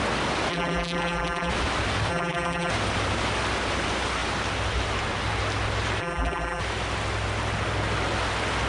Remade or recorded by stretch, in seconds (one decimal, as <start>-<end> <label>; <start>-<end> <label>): 0.0-0.5 recorded; 0.5-1.5 remade; 1.5-2.1 recorded; 2.1-2.7 remade; 2.7-6.0 recorded; 6.0-6.6 remade; 6.6-8.7 recorded